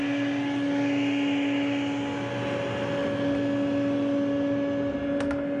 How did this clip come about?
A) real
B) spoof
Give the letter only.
A